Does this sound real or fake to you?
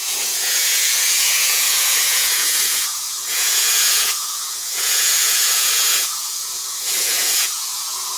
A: fake